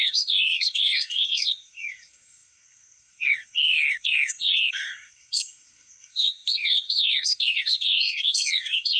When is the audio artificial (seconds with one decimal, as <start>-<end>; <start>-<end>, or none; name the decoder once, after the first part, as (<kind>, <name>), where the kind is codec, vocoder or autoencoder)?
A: 0.0-9.0 (codec, SNAC)